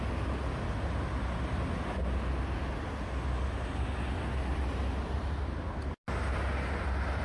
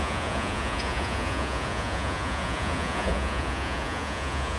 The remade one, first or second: second